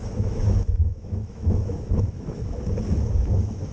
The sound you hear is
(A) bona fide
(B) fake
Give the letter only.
B